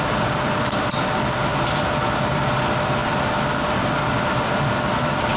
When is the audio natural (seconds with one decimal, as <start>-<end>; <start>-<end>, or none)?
0.0-5.4